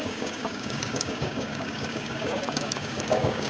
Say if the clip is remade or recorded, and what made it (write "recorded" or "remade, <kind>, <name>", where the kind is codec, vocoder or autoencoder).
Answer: remade, codec, DAC